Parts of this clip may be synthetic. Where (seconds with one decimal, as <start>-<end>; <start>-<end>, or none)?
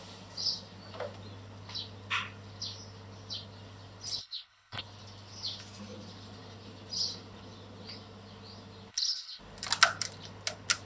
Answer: 4.2-4.8; 8.9-9.4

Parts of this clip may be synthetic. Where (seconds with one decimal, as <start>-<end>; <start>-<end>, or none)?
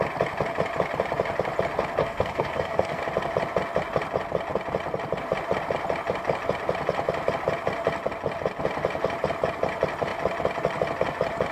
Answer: 2.0-3.0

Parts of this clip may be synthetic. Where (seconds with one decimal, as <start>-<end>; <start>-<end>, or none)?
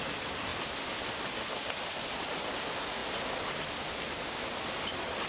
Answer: none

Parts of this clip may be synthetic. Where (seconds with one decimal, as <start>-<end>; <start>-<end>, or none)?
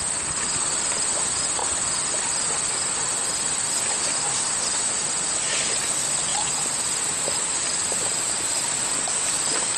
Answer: 6.3-8.3